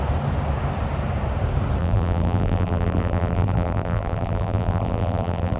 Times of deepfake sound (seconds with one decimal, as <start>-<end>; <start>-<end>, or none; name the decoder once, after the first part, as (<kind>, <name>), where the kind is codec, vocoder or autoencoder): 1.8-5.6 (vocoder, BigVGAN v2)